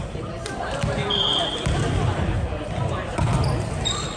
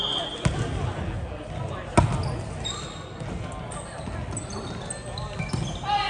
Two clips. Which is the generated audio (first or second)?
first